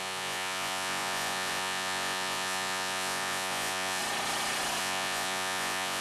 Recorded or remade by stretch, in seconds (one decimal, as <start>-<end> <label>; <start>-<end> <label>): 0.0-4.0 remade; 4.0-4.8 recorded; 4.8-6.0 remade